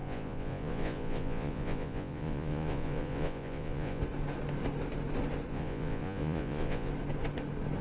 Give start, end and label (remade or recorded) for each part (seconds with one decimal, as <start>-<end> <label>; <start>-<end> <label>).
0.0-4.0 remade; 4.0-5.5 recorded; 5.5-6.9 remade; 6.9-7.8 recorded